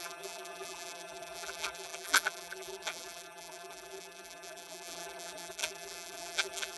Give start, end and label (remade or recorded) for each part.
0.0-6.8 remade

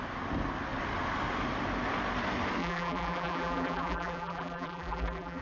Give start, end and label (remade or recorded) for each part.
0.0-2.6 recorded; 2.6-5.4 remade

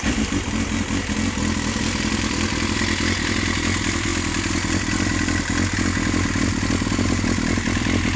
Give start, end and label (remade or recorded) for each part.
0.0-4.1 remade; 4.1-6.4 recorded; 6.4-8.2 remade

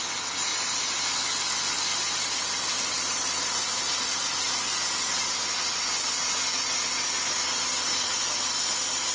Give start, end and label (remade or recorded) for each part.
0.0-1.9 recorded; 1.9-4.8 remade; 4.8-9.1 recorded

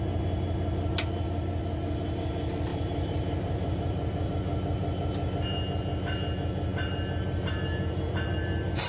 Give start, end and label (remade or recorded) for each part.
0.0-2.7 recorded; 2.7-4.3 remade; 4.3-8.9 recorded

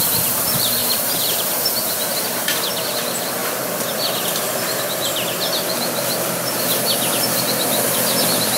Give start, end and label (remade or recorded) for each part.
0.0-0.8 recorded; 0.8-2.6 remade; 2.6-8.6 recorded